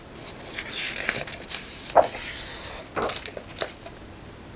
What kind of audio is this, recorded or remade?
recorded